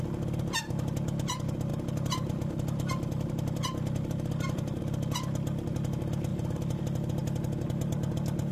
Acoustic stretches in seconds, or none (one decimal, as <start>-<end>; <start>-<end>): 0.0-1.7; 4.8-6.3; 6.8-8.5